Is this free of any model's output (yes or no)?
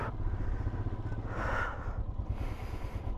yes